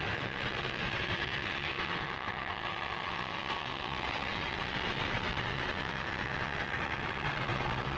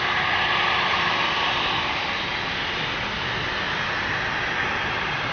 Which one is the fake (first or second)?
first